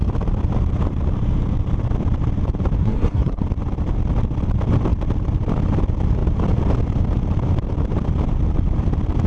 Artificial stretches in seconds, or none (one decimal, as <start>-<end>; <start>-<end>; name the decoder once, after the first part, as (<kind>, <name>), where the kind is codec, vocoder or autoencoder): 2.8-3.4 (codec, SNAC)